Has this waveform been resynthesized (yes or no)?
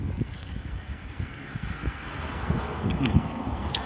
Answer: yes